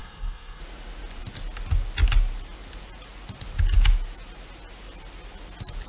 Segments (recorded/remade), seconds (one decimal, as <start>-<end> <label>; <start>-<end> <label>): 0.0-0.6 remade; 0.6-5.9 recorded